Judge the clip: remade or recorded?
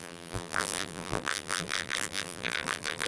remade